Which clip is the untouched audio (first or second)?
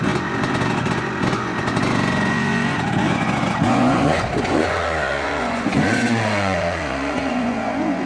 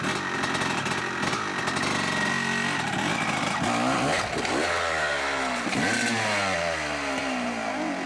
second